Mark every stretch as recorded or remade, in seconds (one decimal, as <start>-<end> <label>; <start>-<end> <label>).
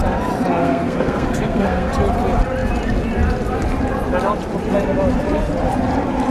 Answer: 0.0-0.6 recorded; 0.6-1.9 remade; 1.9-6.3 recorded